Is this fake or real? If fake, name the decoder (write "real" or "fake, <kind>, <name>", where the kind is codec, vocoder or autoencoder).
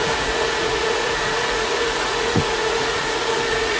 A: fake, vocoder, Vocos